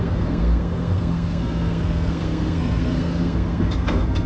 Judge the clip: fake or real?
fake